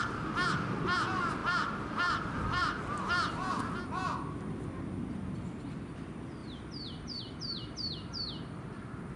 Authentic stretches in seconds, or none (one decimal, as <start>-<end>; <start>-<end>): 0.0-1.4; 2.8-6.4; 7.2-9.2